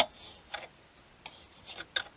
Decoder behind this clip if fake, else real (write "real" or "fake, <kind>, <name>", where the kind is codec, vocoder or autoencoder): real